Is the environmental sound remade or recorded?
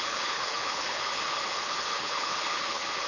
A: remade